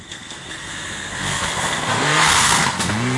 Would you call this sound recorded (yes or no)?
no